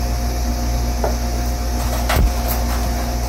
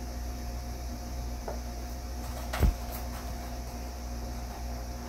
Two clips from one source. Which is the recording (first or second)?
first